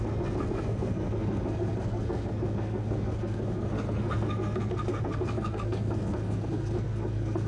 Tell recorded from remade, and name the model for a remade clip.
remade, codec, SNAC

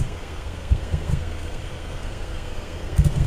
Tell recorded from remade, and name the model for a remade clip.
remade, codec, SNAC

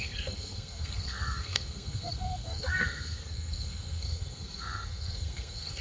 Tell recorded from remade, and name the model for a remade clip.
remade, codec, SNAC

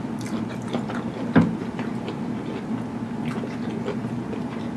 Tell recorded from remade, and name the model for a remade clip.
recorded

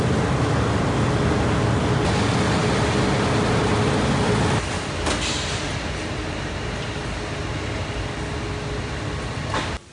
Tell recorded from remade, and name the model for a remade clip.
recorded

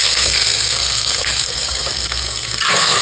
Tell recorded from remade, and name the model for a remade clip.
remade, codec, SNAC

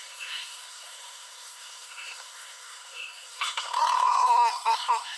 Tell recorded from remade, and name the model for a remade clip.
remade, codec, SNAC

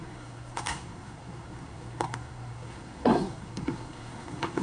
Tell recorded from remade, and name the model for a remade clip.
remade, codec, SNAC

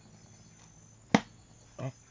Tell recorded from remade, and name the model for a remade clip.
recorded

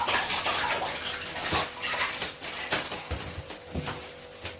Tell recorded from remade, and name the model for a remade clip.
recorded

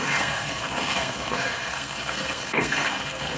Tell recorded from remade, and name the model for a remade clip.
remade, codec, SNAC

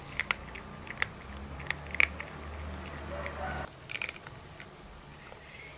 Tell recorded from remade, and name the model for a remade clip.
recorded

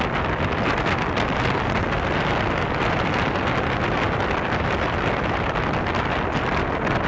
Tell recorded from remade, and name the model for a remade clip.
recorded